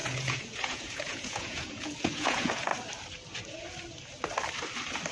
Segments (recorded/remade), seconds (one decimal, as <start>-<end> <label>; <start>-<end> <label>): 0.0-2.7 remade; 2.7-5.1 recorded